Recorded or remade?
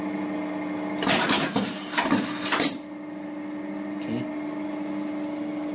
recorded